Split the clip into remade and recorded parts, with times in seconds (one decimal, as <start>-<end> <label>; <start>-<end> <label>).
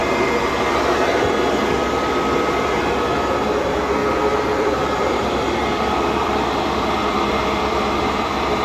0.0-4.0 recorded; 4.0-8.6 remade